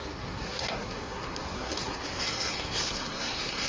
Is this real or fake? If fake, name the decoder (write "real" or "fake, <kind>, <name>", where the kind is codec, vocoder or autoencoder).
fake, codec, SNAC